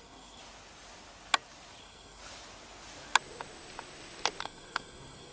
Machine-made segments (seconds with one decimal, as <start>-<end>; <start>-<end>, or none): 0.0-0.4; 1.8-2.2; 4.4-5.3